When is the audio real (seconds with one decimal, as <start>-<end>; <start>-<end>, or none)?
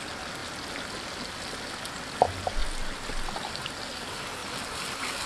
0.0-5.3